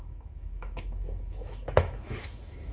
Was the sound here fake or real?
fake